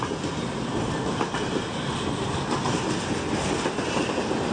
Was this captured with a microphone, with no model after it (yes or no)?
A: yes